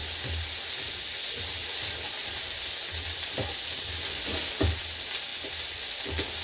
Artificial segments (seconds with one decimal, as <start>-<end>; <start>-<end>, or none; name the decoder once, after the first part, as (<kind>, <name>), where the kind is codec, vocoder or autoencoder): none